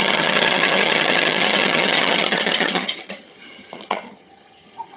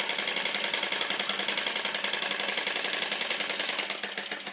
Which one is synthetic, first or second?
first